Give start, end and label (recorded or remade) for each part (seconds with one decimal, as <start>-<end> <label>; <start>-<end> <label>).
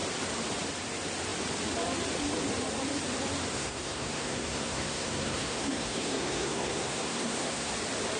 0.0-3.5 recorded; 3.5-7.7 remade; 7.7-8.2 recorded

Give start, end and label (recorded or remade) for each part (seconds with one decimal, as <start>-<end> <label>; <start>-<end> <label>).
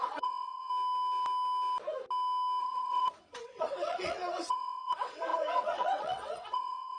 0.0-0.7 remade; 0.7-2.6 recorded; 2.6-7.0 remade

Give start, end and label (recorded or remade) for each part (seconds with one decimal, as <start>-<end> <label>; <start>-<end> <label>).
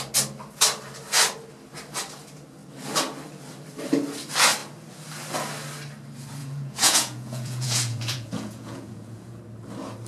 0.0-6.4 recorded; 6.4-9.4 remade; 9.4-10.1 recorded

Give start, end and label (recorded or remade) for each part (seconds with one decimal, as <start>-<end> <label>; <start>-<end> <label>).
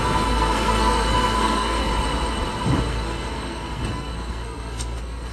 0.0-1.9 remade; 1.9-2.8 recorded; 2.8-5.3 remade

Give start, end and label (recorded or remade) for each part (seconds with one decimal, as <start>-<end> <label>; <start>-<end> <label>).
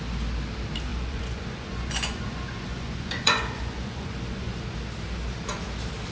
0.0-0.9 recorded; 0.9-4.6 remade; 4.6-6.1 recorded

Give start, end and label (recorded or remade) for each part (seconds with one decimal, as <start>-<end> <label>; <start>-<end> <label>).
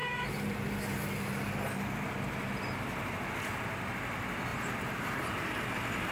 0.0-4.5 recorded; 4.5-5.6 remade; 5.6-6.1 recorded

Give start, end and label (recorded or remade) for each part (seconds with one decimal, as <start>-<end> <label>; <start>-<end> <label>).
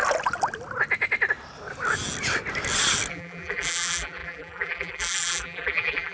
0.0-3.1 recorded; 3.1-6.1 remade